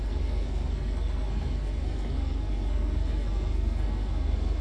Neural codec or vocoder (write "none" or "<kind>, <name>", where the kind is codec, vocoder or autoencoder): codec, SNAC